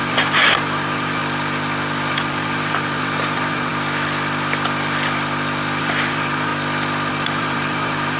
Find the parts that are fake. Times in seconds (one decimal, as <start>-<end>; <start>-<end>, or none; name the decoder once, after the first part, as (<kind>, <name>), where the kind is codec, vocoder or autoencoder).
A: 0.0-1.2 (vocoder, BigVGAN v2); 2.1-3.7; 5.8-6.5; 7.1-8.2